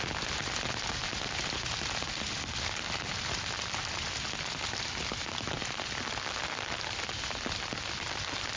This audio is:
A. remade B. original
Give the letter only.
B